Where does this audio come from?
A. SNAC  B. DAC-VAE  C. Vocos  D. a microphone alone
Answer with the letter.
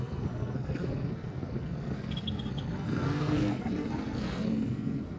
A